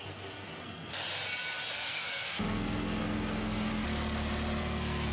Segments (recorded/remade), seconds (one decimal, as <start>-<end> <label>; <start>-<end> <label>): 0.0-0.9 remade; 0.9-1.7 recorded; 1.7-3.7 remade; 3.7-4.6 recorded; 4.6-5.1 remade